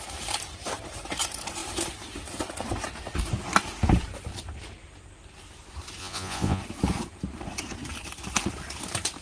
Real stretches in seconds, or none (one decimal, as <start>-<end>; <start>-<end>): 0.0-6.0; 6.6-9.2